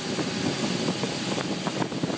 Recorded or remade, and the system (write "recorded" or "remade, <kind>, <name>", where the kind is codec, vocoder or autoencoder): recorded